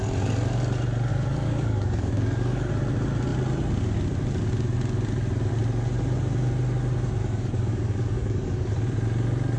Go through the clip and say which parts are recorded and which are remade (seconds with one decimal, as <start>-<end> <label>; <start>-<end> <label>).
0.0-1.1 recorded; 1.1-2.7 remade; 2.7-7.2 recorded; 7.2-8.7 remade; 8.7-9.6 recorded